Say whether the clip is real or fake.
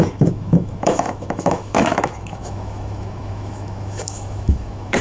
fake